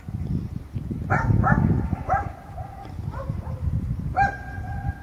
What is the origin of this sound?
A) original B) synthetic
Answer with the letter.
A